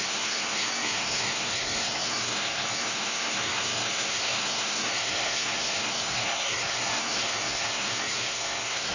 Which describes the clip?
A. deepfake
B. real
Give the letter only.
A